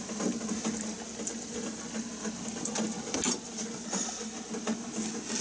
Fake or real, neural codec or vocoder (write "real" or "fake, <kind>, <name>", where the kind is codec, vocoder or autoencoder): real